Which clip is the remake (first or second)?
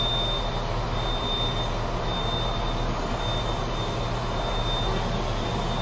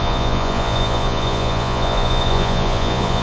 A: second